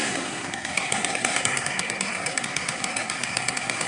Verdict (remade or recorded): remade